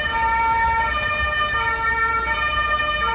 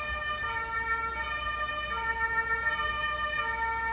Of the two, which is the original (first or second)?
second